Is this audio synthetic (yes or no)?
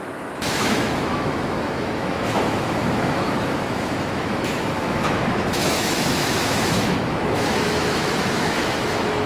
yes